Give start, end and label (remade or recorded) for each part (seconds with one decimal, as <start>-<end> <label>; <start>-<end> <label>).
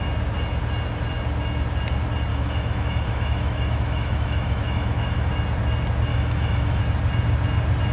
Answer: 0.0-2.3 recorded; 2.3-5.3 remade; 5.3-6.1 recorded; 6.1-6.8 remade; 6.8-7.9 recorded